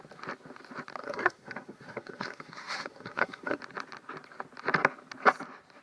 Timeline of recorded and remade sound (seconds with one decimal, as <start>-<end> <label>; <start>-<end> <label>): 0.0-1.0 recorded; 1.0-3.6 remade; 3.6-5.8 recorded